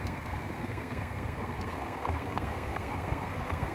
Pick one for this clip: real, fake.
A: fake